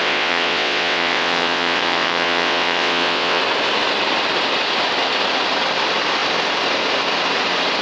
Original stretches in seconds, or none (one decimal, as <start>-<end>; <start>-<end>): 3.4-7.8